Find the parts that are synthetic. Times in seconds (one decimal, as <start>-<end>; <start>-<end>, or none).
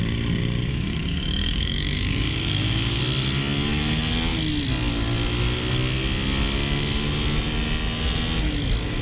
0.7-3.0